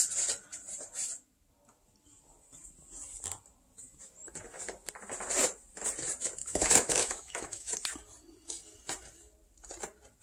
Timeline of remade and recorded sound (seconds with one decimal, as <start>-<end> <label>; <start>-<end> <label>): 0.0-6.4 recorded; 6.4-7.7 remade; 7.7-10.2 recorded